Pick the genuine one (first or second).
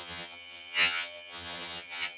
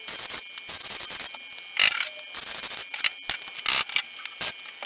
second